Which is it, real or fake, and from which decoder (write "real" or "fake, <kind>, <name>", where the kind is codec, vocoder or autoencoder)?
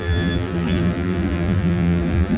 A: fake, vocoder, BigVGAN v2